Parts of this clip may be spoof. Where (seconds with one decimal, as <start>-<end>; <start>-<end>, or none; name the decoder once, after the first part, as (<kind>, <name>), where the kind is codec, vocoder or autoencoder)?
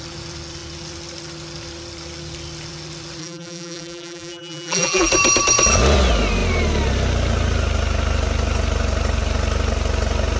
3.2-5.1 (vocoder, BigVGAN v2)